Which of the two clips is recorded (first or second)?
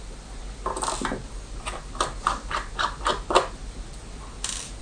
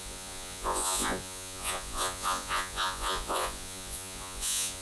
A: first